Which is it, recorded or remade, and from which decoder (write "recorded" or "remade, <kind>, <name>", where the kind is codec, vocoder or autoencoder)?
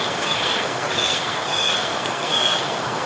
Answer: remade, codec, SNAC